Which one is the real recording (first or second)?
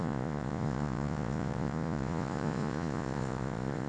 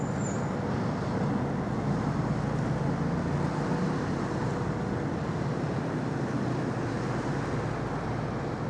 second